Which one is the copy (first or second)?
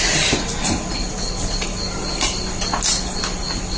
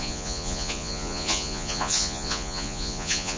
second